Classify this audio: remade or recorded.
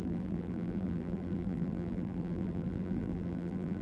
remade